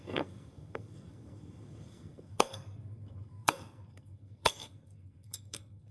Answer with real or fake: fake